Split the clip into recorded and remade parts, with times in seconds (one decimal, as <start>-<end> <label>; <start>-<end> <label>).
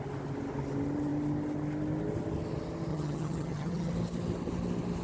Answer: 0.0-2.9 recorded; 2.9-3.9 remade; 3.9-5.0 recorded